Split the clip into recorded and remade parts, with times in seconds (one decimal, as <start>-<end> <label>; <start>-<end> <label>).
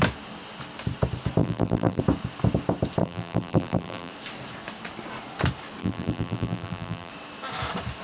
0.0-1.4 recorded; 1.4-2.0 remade; 2.0-3.0 recorded; 3.0-4.1 remade; 4.1-5.8 recorded; 5.8-7.1 remade; 7.1-8.0 recorded